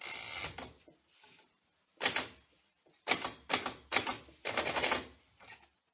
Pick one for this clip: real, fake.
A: real